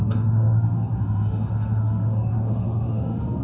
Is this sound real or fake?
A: fake